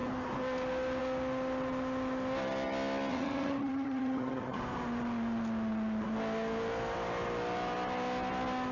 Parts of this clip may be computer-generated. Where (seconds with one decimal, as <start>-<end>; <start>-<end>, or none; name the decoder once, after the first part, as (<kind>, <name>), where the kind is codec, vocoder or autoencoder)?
3.1-4.6 (vocoder, HiFi-GAN)